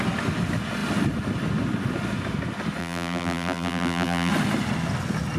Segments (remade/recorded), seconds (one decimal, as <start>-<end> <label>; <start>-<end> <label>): 0.0-2.8 recorded; 2.8-4.3 remade; 4.3-5.4 recorded